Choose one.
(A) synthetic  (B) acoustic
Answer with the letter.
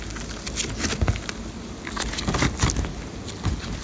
B